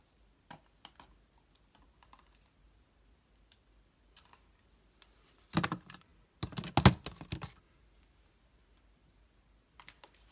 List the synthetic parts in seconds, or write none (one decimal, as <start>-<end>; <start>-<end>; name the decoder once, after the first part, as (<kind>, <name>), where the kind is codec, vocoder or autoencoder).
none

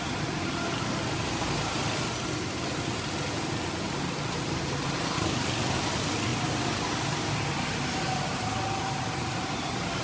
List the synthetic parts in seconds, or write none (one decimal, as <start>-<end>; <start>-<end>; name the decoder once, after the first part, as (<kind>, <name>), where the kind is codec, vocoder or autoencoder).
none

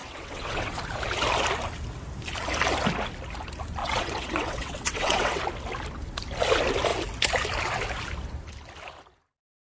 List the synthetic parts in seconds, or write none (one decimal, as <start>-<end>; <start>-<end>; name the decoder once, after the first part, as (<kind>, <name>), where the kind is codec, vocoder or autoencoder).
0.0-0.8 (vocoder, WaveNeXt); 3.8-5.4

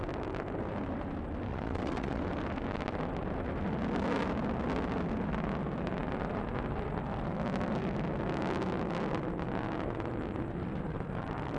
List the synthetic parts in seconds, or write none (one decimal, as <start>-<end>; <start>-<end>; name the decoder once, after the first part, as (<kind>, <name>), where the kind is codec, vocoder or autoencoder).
1.5-2.2 (vocoder, WaveNeXt)

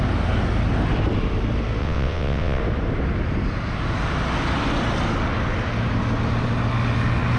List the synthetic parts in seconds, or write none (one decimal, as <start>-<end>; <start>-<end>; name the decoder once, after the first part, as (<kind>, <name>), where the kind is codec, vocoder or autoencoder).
1.8-2.6 (vocoder, WaveNeXt)

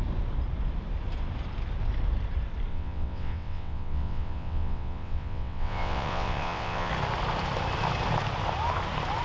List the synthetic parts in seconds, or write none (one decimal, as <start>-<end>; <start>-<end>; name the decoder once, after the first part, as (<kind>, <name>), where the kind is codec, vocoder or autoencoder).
2.7-6.9 (vocoder, WaveNeXt)

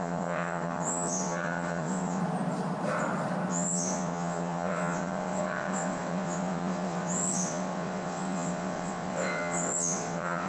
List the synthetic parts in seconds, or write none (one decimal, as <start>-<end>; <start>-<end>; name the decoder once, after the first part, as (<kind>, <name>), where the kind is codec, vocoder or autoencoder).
0.0-2.2 (vocoder, WaveNeXt); 3.5-10.5

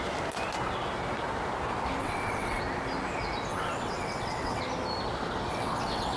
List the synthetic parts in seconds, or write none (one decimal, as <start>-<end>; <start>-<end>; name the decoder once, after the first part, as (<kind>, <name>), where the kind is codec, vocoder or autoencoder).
2.0-2.6 (vocoder, WaveNeXt); 3.5-4.6; 5.5-6.2